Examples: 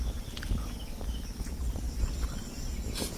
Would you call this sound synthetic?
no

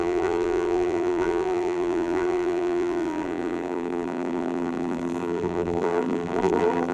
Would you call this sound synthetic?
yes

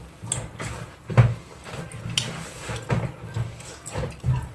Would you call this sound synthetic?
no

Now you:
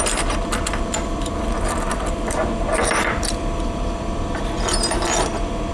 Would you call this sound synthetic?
yes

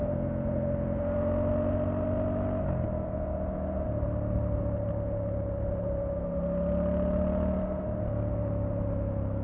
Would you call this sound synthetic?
no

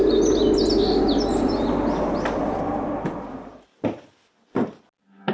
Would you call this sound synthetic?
no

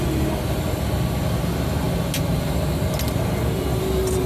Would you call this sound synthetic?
no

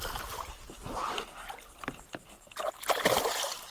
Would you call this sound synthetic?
no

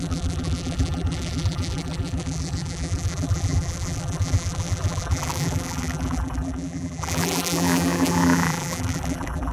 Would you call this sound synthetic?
yes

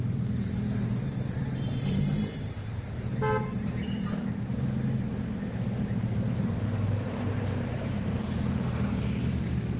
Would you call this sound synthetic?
yes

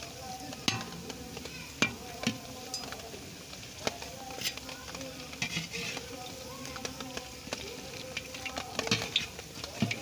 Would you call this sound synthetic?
no